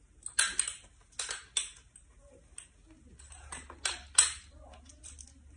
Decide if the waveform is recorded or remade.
recorded